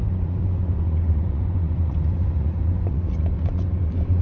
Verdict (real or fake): fake